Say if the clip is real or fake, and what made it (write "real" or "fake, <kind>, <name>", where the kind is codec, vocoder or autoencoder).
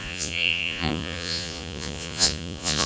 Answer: fake, vocoder, Vocos